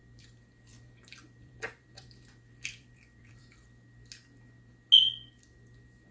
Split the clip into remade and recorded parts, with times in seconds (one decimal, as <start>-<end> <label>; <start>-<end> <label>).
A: 0.0-3.4 remade; 3.4-6.1 recorded